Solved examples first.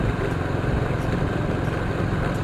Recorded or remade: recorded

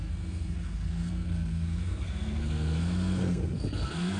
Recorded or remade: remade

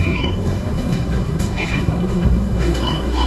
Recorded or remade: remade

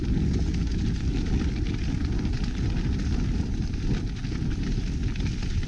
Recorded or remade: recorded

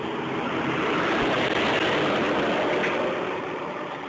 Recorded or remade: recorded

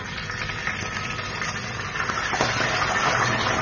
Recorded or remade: recorded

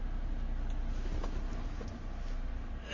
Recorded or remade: recorded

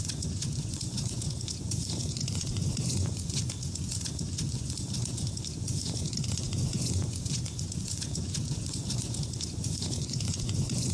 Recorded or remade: remade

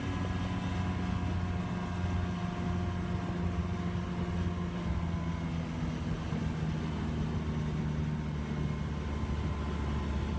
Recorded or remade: recorded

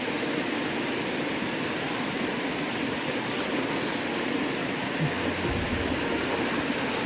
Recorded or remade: recorded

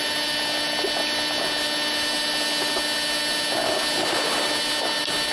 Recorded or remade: recorded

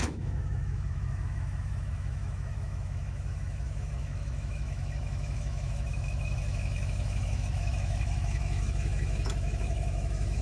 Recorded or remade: remade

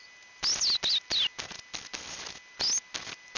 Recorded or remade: recorded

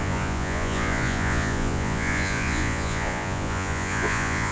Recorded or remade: remade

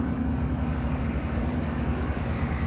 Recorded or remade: remade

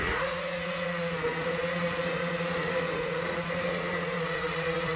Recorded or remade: remade